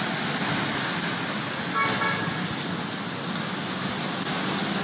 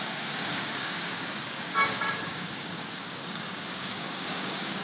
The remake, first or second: second